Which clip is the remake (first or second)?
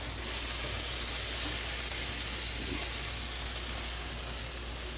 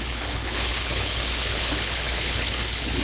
second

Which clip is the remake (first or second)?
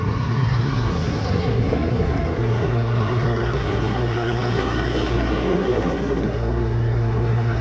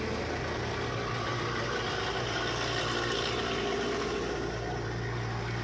first